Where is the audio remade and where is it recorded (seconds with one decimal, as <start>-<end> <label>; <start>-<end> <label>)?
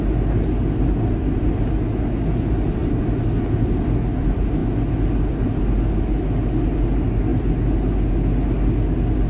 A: 0.0-9.3 recorded